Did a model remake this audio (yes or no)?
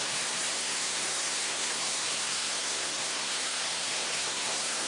yes